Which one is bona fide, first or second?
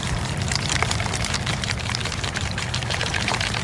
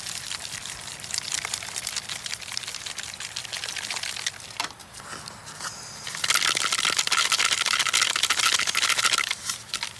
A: second